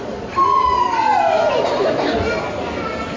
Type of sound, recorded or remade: recorded